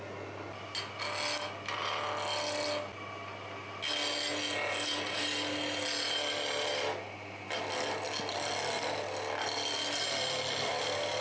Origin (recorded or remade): recorded